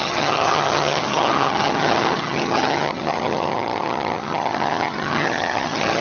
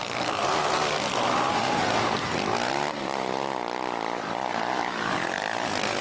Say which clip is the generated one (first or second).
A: first